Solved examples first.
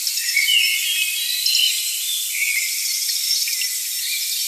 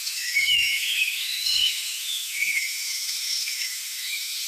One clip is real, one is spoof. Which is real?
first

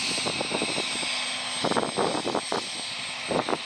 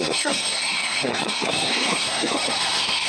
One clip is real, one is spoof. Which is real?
first